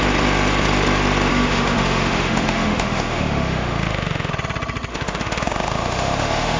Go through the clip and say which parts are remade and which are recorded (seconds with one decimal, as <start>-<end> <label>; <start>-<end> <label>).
0.0-1.3 recorded; 1.3-4.3 remade; 4.3-4.9 recorded; 4.9-6.6 remade